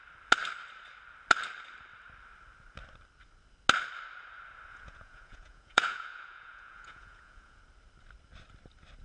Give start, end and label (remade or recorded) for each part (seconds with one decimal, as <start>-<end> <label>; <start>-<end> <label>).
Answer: 0.0-4.7 recorded; 4.7-7.6 remade; 7.6-9.0 recorded